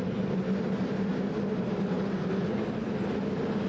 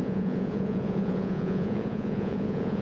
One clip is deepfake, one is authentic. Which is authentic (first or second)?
first